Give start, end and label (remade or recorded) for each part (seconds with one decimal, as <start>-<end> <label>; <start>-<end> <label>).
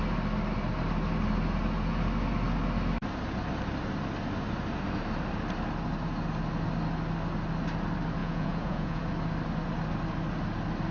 0.0-8.2 recorded; 8.2-9.0 remade; 9.0-10.9 recorded